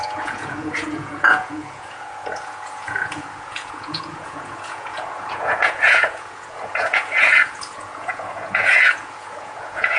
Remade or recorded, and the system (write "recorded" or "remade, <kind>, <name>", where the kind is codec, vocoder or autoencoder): remade, vocoder, Vocos